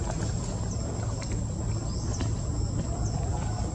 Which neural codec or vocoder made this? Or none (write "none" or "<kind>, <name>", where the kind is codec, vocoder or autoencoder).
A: none